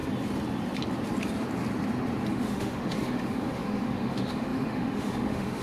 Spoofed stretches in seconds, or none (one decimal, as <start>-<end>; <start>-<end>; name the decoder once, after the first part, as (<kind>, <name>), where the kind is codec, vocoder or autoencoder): 2.3-5.6 (autoencoder, DAC-VAE)